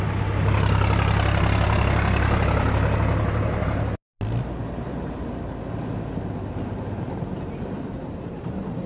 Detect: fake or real real